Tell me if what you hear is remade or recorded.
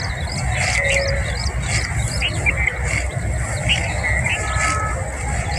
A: recorded